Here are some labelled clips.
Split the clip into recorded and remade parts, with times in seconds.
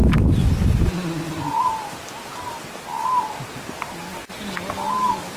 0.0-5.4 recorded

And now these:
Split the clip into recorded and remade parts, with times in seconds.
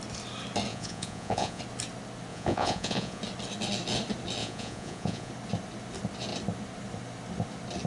0.0-0.7 recorded; 0.7-1.6 remade; 1.6-2.3 recorded; 2.3-3.2 remade; 3.2-4.4 recorded; 4.4-5.3 remade; 5.3-7.9 recorded